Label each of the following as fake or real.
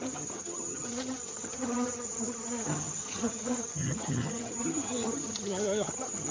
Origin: fake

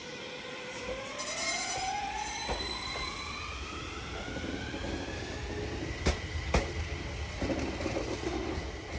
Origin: real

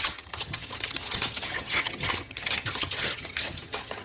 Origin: fake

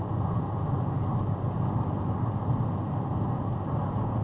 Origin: real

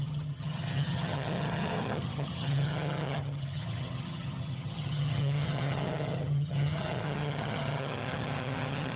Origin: fake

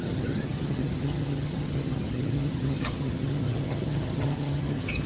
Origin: fake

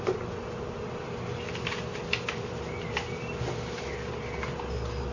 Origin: real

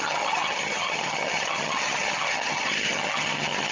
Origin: fake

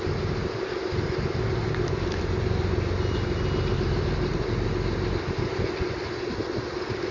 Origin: real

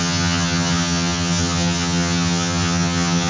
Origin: fake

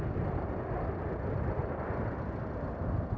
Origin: real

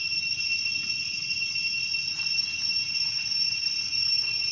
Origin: real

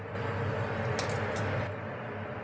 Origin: real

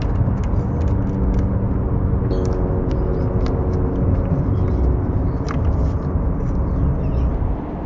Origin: real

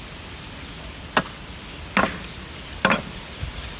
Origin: real